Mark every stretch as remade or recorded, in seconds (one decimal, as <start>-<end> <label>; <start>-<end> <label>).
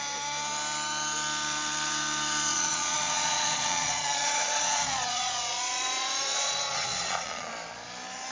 0.0-2.5 recorded; 2.5-7.5 remade; 7.5-8.3 recorded